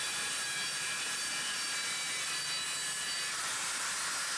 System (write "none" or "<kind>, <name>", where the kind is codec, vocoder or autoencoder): none